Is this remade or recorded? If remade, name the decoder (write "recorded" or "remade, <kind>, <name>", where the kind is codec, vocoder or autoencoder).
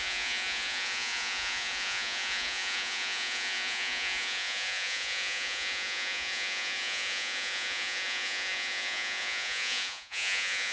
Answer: remade, vocoder, Vocos